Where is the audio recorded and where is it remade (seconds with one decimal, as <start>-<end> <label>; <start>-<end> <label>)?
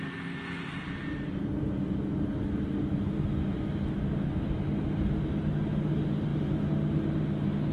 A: 0.0-7.7 recorded